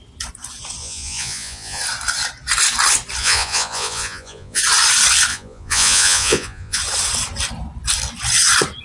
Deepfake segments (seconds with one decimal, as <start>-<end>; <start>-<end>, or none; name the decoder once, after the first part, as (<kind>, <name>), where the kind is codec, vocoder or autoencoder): 0.8-1.8 (vocoder, Vocos); 3.2-4.6; 5.3-6.8